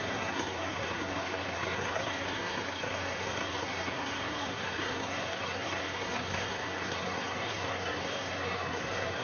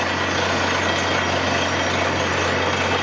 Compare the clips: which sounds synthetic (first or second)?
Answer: first